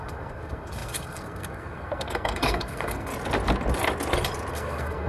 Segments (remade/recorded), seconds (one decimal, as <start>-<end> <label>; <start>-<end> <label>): 0.0-3.1 remade; 3.1-4.5 recorded; 4.5-5.1 remade